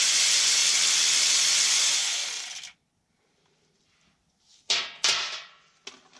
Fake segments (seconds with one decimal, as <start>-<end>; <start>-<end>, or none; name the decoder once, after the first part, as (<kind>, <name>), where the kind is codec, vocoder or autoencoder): 0.0-0.6 (vocoder, Vocos); 1.5-2.2